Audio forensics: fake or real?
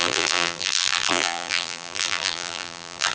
fake